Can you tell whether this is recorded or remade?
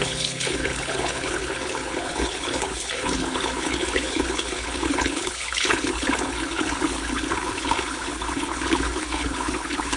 remade